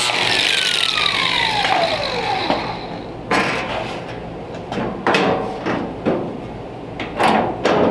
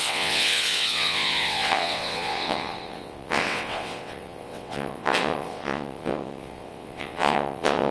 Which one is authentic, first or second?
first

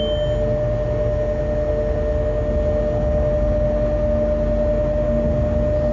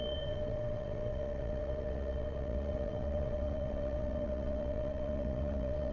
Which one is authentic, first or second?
first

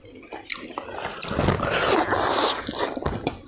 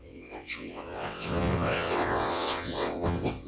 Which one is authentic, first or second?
first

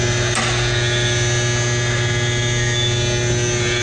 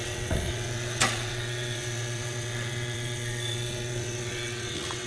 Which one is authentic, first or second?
first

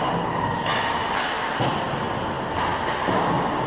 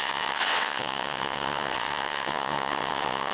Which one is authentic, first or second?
first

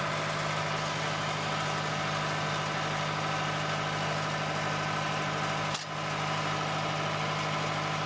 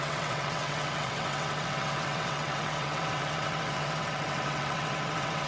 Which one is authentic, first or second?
first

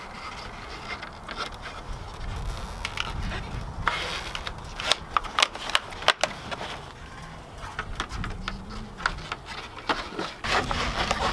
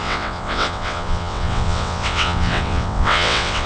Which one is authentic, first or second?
first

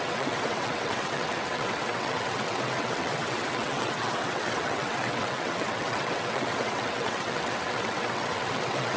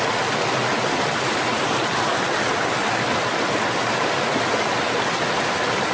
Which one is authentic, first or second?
second